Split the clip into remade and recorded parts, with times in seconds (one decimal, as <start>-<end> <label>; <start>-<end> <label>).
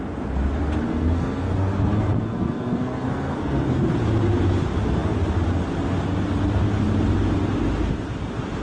0.0-0.9 recorded; 0.9-3.8 remade; 3.8-8.6 recorded